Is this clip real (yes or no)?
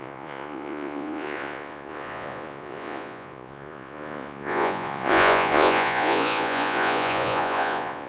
no